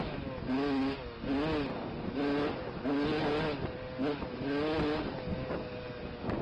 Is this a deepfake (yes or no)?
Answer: no